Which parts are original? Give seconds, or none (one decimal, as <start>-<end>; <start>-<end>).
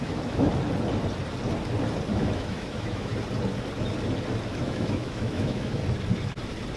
0.5-2.1; 3.1-4.5; 5.8-6.8